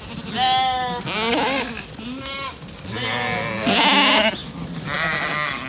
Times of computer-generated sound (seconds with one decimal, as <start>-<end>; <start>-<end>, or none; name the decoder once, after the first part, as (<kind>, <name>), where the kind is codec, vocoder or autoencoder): none